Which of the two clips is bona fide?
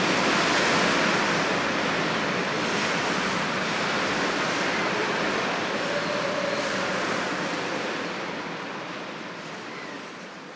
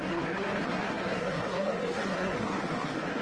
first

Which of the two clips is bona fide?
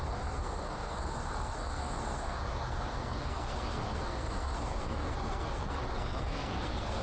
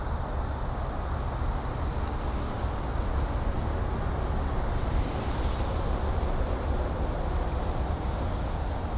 second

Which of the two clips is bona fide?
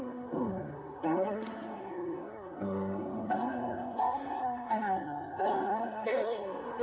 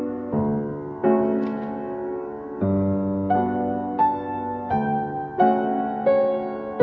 second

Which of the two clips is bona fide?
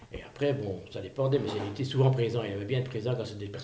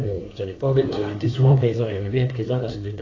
first